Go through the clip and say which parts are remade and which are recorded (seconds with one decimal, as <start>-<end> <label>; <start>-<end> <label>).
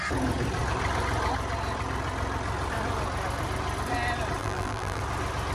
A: 0.0-4.4 recorded; 4.4-5.0 remade; 5.0-5.5 recorded